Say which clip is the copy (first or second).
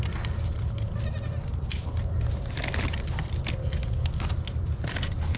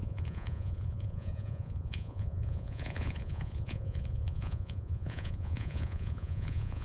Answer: second